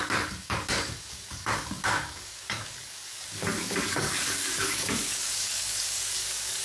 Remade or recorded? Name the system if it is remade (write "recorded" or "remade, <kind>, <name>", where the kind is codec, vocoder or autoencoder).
remade, codec, DAC